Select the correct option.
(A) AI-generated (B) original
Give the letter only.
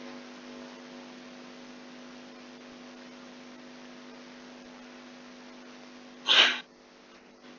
B